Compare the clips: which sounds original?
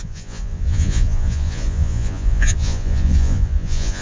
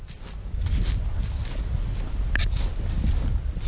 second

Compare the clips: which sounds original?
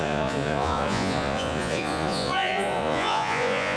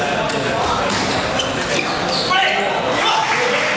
second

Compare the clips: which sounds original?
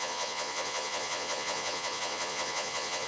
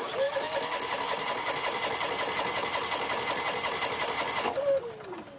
second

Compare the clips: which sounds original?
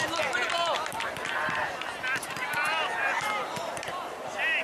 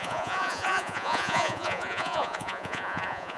first